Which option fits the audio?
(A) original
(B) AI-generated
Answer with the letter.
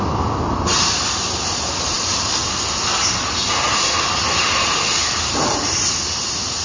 B